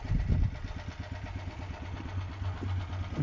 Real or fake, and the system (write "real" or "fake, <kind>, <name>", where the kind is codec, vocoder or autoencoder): real